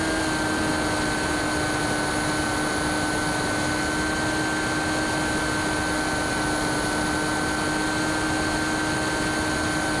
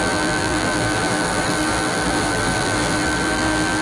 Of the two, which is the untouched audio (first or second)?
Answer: first